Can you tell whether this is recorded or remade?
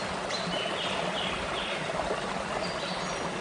recorded